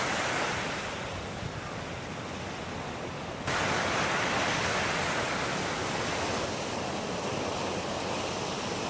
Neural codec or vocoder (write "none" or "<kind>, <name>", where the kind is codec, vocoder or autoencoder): none